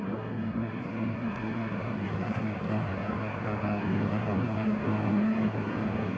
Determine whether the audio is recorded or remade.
remade